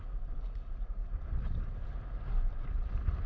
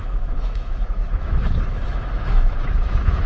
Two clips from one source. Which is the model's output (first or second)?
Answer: second